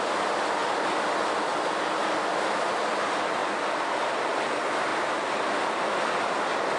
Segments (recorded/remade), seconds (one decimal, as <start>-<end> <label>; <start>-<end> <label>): 0.0-6.8 recorded